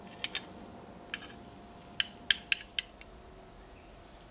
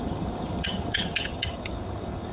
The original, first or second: first